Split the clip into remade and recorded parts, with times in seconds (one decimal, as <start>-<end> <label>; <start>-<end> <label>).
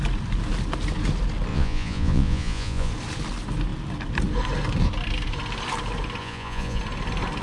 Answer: 0.0-1.5 recorded; 1.5-2.9 remade; 2.9-6.2 recorded; 6.2-6.8 remade; 6.8-7.4 recorded